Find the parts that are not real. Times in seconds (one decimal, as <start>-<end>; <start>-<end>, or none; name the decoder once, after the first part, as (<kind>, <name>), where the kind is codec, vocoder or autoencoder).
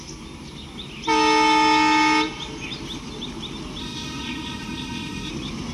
3.8-5.3 (autoencoder, DAC-VAE)